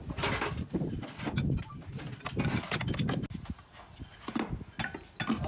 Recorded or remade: recorded